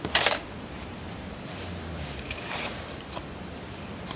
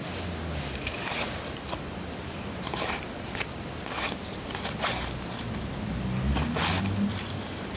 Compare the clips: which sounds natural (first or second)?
second